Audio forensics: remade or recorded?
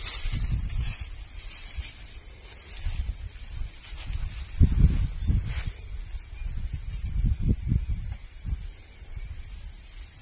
recorded